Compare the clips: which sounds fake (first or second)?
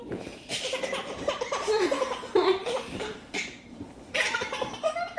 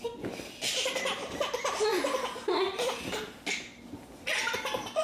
first